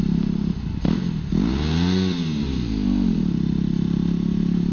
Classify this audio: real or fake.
real